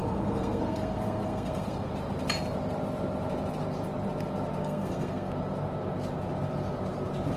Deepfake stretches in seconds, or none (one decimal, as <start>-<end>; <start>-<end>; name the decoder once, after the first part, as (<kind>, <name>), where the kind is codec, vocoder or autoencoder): 0.0-1.9 (codec, SNAC); 4.6-5.3